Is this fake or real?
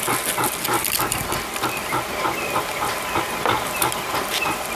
real